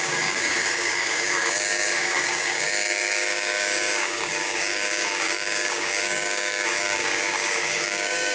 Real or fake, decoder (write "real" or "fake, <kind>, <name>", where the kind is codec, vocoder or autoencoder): fake, codec, DAC